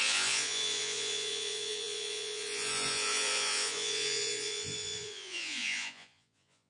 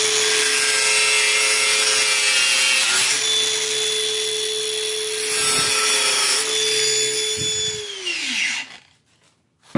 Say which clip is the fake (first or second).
first